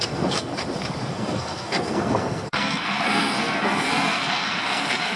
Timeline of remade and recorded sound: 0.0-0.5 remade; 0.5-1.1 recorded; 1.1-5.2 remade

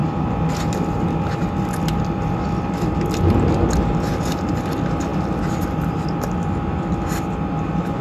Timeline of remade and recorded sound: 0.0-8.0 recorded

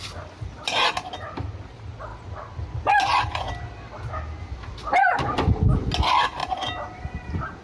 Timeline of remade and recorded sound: 0.0-7.6 recorded

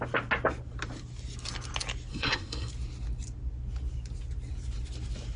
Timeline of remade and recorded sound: 0.0-2.1 recorded; 2.1-2.7 remade; 2.7-5.4 recorded

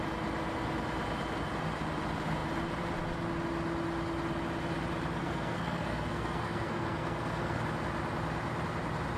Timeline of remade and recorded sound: 0.0-5.2 recorded; 5.2-7.6 remade; 7.6-9.2 recorded

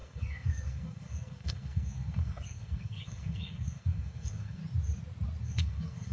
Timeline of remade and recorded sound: 0.0-4.6 remade; 4.6-5.4 recorded; 5.4-6.1 remade

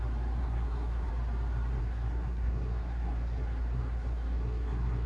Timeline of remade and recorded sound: 0.0-0.4 recorded; 0.4-1.1 remade; 1.1-1.8 recorded; 1.8-5.1 remade

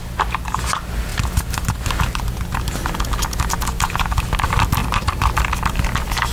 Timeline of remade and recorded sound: 0.0-6.3 recorded